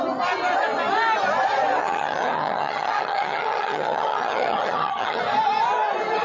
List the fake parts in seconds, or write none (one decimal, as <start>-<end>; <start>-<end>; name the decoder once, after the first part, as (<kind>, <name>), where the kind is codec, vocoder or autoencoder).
1.8-5.2 (vocoder, HiFi-GAN)